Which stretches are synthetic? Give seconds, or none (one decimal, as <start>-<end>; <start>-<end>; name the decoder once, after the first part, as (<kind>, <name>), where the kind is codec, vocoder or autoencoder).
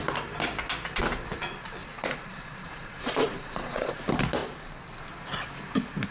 1.9-4.0 (vocoder, Vocos)